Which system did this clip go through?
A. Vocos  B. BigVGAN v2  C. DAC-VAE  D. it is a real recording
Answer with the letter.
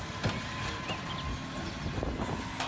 D